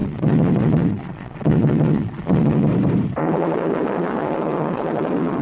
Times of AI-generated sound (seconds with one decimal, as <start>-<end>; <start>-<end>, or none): 0.0-2.7; 3.2-5.4

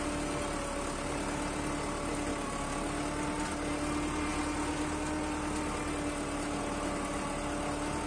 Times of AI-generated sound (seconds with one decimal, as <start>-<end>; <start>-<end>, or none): none

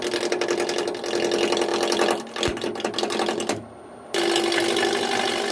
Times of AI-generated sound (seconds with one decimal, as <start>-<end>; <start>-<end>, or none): none